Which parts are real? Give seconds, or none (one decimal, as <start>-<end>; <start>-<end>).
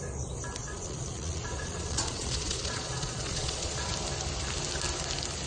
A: 0.0-0.6; 3.9-5.5